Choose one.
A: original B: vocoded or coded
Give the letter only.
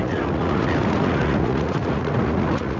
B